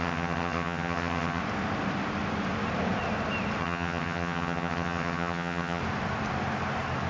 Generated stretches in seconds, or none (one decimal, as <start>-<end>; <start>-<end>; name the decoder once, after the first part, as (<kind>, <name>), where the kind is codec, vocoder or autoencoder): 0.0-1.4 (vocoder, HiFi-GAN); 3.6-5.8